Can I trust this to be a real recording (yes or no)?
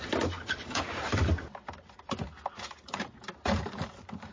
no